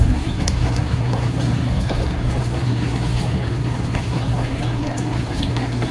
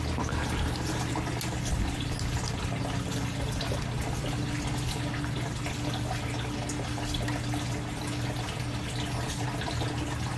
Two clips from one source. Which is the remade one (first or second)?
first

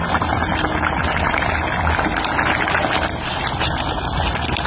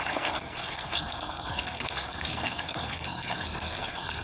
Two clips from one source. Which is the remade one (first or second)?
second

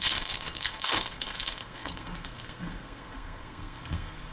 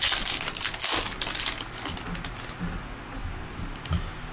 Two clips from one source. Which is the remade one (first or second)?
first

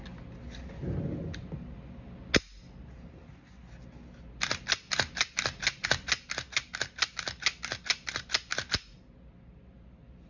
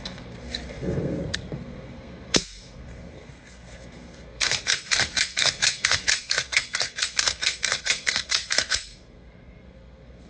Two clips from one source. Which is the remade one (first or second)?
second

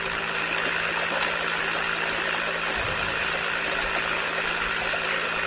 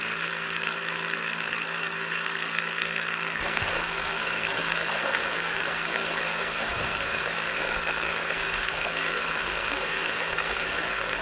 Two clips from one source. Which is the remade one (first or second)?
second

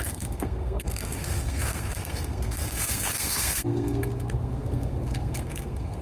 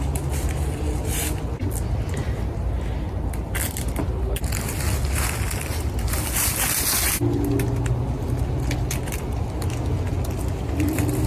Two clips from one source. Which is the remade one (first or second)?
first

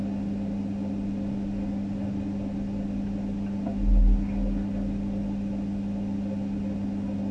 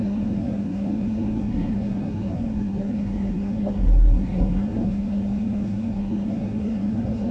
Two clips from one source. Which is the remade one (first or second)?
second